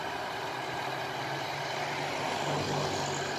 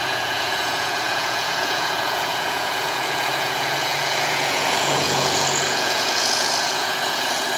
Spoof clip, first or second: second